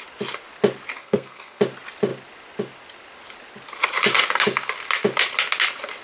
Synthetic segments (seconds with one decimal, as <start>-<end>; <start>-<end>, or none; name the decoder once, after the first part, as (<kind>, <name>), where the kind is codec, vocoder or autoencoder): 1.0-1.6 (codec, SNAC)